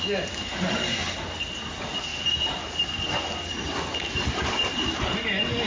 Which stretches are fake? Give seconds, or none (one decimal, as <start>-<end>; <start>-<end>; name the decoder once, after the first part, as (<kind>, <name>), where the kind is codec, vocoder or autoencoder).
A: none